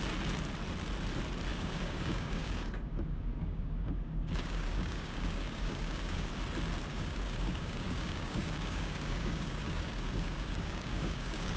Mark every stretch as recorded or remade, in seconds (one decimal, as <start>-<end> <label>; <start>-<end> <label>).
0.0-1.5 recorded; 1.5-6.3 remade; 6.3-6.9 recorded; 6.9-11.6 remade

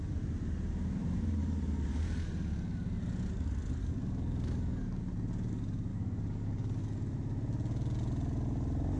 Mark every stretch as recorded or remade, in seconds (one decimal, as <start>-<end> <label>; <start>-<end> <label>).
0.0-1.4 recorded; 1.4-2.0 remade; 2.0-3.8 recorded; 3.8-5.0 remade; 5.0-5.9 recorded; 5.9-6.8 remade; 6.8-9.0 recorded

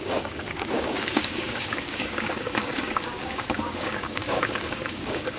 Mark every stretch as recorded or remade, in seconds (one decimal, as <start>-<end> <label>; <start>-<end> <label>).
0.0-5.4 remade

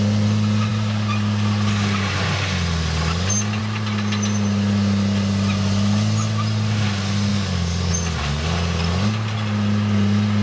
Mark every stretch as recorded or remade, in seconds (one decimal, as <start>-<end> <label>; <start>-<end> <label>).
0.0-7.3 recorded; 7.3-7.9 remade; 7.9-10.4 recorded